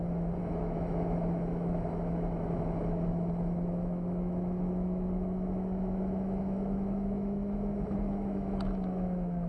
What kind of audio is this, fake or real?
fake